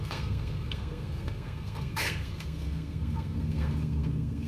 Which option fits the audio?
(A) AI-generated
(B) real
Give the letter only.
A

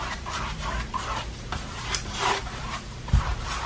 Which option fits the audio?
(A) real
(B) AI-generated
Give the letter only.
B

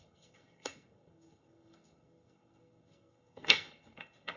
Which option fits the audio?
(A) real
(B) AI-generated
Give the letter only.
B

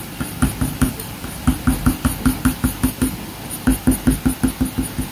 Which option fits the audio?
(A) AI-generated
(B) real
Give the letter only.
B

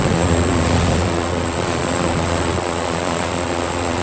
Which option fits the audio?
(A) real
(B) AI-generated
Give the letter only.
B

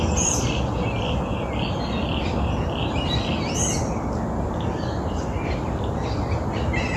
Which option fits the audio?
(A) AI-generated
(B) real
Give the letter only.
B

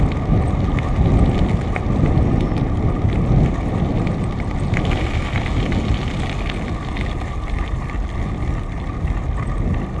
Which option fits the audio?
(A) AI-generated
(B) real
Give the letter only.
B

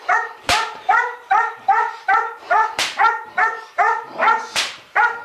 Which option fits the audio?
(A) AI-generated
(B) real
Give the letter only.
A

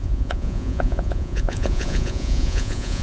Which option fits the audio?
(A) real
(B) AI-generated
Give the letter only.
B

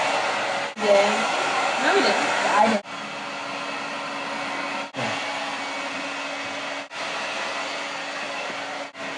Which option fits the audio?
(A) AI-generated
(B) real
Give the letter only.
B